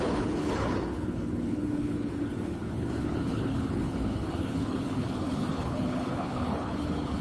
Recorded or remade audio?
remade